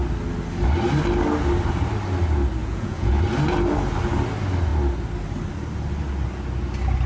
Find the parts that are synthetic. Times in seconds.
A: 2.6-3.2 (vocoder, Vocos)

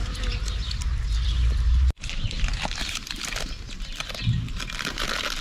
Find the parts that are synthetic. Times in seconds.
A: 0.0-3.2 (vocoder, BigVGAN v2)

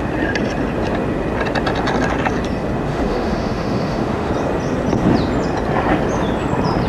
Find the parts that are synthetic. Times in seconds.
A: 2.9-4.3 (autoencoder, DAC-VAE)

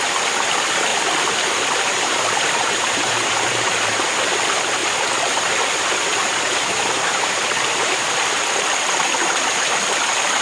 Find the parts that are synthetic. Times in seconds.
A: 0.9-3.7 (vocoder, BigVGAN v2); 4.8-8.9

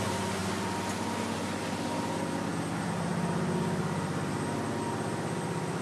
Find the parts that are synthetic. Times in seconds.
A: none

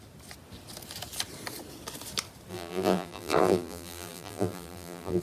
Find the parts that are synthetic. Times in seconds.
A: 2.5-5.2 (vocoder, BigVGAN v2)